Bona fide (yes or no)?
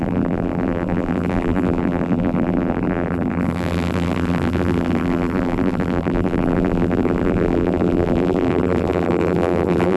no